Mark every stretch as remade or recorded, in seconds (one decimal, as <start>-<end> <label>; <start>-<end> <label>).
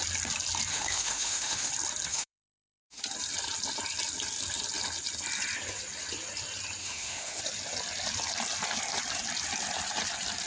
0.0-0.7 recorded; 0.7-1.7 remade; 1.7-2.1 recorded; 2.1-3.0 remade; 3.0-6.8 recorded; 6.8-7.4 remade; 7.4-10.5 recorded